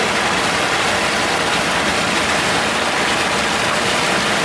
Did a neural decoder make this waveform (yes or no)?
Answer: no